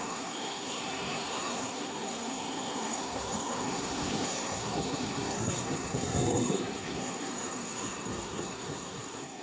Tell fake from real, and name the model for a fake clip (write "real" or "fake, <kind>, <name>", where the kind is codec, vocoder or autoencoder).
fake, codec, SNAC